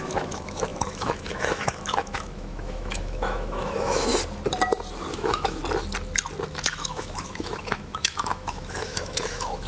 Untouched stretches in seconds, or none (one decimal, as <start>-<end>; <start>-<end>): 4.1-5.1; 5.6-6.5